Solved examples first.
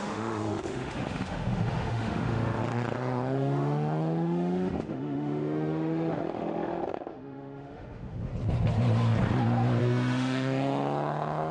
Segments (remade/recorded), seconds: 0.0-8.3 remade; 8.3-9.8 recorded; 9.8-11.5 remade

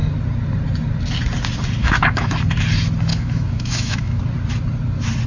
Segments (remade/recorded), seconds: 0.0-1.8 recorded; 1.8-2.3 remade; 2.3-3.1 recorded; 3.1-4.2 remade; 4.2-5.3 recorded

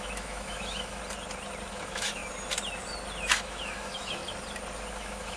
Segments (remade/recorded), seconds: 0.0-1.0 remade; 1.0-1.7 recorded; 1.7-2.2 remade; 2.2-3.3 recorded; 3.3-4.2 remade; 4.2-4.9 recorded; 4.9-5.4 remade

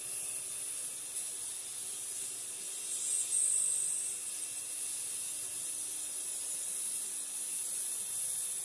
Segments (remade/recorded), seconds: 0.0-8.6 recorded

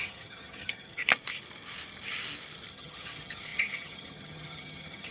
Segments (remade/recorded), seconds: 0.0-1.0 remade; 1.0-2.7 recorded; 2.7-5.1 remade

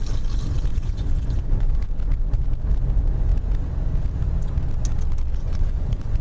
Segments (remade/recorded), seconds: 0.0-0.7 recorded; 0.7-1.9 remade; 1.9-5.4 recorded; 5.4-6.2 remade